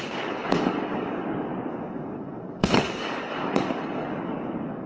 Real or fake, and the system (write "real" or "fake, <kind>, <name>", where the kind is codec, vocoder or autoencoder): fake, codec, DAC